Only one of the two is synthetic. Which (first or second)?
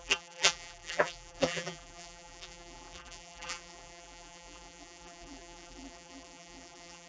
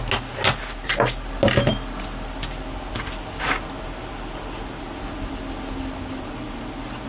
first